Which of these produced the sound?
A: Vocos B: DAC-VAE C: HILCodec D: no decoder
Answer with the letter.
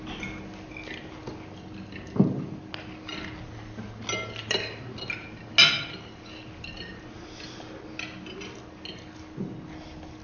D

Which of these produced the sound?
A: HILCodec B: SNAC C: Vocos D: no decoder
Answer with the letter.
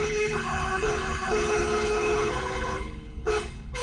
A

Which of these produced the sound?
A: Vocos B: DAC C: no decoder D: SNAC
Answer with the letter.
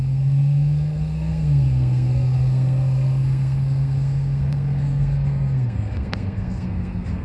D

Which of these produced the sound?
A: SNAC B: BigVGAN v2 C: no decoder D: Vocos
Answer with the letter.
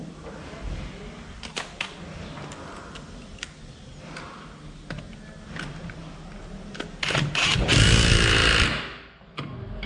C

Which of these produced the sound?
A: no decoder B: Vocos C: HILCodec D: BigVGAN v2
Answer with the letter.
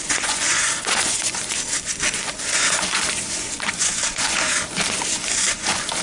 B